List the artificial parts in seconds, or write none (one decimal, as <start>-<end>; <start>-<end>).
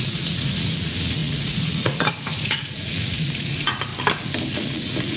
0.0-3.9; 4.5-5.2